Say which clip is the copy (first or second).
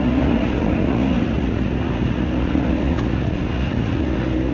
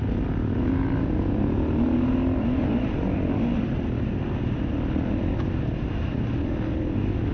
first